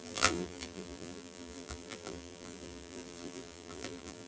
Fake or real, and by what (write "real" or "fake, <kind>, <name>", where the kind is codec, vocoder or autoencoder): fake, vocoder, BigVGAN v2